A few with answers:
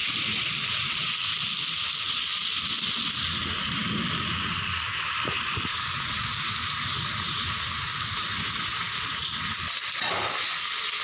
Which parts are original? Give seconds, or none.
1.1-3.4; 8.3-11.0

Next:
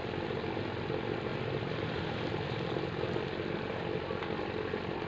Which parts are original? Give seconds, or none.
0.0-5.1

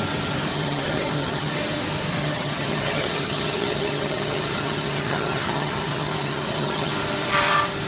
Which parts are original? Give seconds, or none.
0.0-0.5; 1.5-2.2; 6.9-7.9

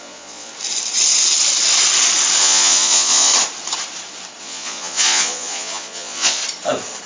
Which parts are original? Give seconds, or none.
0.5-2.4; 3.3-4.4; 6.4-7.1

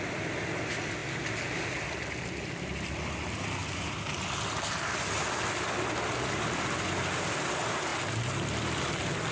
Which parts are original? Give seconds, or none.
0.0-9.3

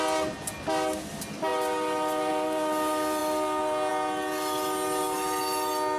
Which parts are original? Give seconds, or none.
0.0-6.0

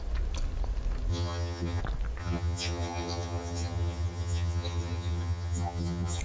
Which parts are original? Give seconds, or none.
0.0-1.1; 1.8-2.2

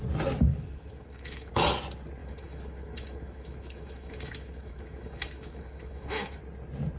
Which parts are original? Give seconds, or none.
0.0-0.5; 1.5-2.2; 6.4-7.0